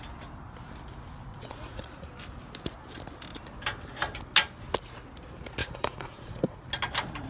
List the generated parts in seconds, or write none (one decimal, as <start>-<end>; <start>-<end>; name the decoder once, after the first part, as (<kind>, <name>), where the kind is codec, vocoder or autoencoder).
1.3-2.1 (vocoder, Vocos); 5.6-6.6